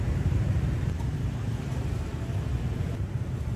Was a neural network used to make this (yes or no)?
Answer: yes